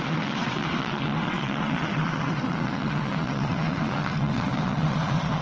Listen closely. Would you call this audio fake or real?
fake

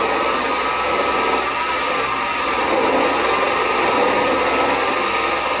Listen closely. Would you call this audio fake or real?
real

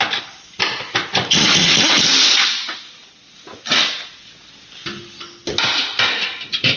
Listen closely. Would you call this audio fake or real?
real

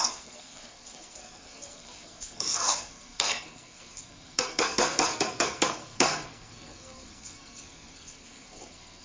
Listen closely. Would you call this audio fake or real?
fake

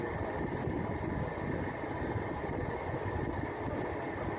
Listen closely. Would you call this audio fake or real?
real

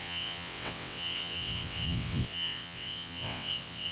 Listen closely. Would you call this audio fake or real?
fake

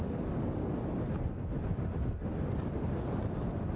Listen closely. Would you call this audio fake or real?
real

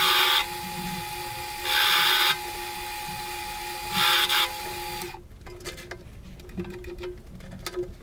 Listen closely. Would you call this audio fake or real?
real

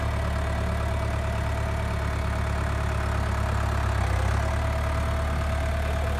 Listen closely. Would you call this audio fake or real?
real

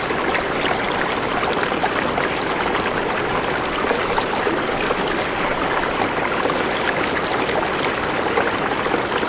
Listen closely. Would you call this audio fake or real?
real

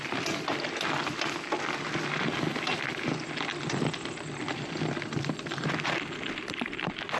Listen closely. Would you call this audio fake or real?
real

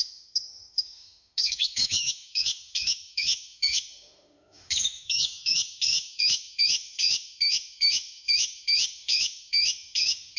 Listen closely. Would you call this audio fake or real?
fake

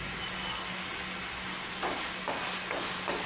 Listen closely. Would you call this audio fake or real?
real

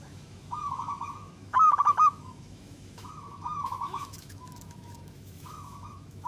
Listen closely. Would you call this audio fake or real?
fake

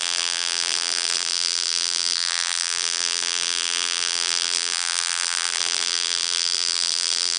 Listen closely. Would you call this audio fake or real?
fake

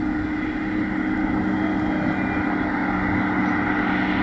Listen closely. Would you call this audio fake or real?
real